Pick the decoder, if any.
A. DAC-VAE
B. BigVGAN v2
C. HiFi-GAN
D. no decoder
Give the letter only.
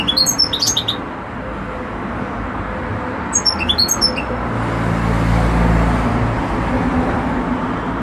D